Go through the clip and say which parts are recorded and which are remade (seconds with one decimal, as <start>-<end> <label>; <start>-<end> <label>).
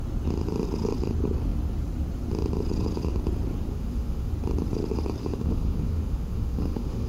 0.0-3.7 recorded; 3.7-4.3 remade; 4.3-5.2 recorded; 5.2-7.1 remade